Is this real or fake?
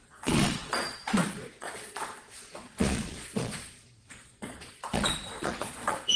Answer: fake